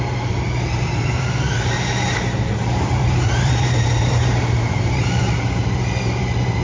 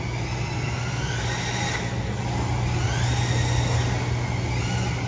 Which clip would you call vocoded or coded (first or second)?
first